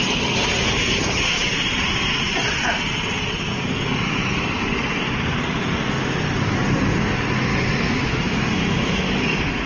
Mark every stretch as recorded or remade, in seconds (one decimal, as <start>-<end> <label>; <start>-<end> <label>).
0.0-7.5 recorded; 7.5-9.7 remade